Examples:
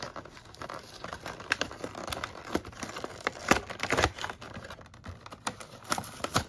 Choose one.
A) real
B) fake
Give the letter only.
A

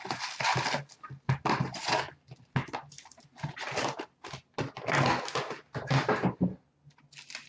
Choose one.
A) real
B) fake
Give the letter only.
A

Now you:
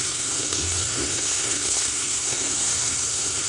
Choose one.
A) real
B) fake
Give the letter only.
B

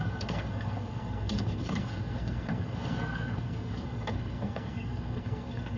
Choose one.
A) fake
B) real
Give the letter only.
A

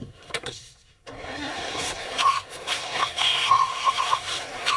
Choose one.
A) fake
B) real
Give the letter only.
A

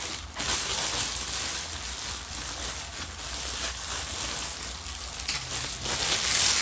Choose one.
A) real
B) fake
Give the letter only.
A